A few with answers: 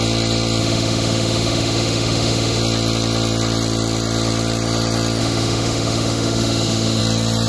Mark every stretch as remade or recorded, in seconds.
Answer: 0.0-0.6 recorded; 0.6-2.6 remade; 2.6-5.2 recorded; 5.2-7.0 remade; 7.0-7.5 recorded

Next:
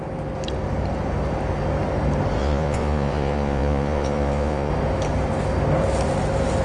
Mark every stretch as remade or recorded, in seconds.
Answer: 0.0-2.4 recorded; 2.4-4.7 remade; 4.7-6.6 recorded

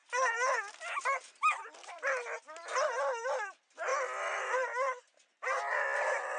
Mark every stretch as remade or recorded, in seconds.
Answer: 0.0-6.4 recorded

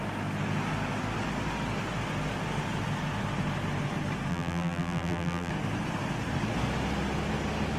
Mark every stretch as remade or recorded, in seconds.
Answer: 0.0-4.3 recorded; 4.3-5.5 remade; 5.5-7.8 recorded

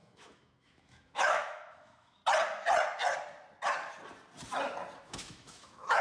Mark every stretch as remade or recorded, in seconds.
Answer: 0.0-2.2 remade; 2.2-5.0 recorded; 5.0-6.0 remade

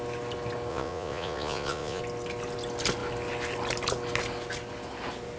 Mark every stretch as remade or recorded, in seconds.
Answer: 0.0-0.7 recorded; 0.7-2.0 remade; 2.0-5.4 recorded